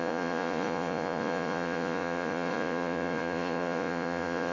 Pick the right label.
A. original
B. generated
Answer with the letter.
B